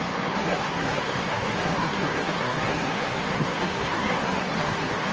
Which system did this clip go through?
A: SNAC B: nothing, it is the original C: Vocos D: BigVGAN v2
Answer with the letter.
A